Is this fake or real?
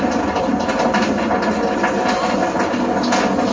real